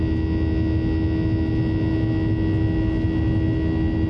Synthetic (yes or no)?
no